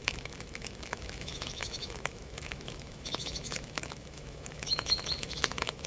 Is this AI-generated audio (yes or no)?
yes